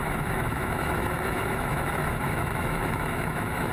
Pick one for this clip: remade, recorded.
remade